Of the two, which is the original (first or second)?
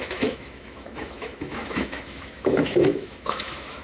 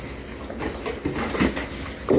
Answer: second